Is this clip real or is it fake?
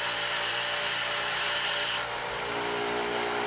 real